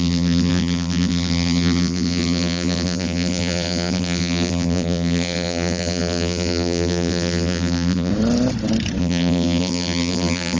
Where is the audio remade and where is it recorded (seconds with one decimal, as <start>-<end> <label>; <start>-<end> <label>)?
0.0-8.1 remade; 8.1-9.0 recorded; 9.0-10.6 remade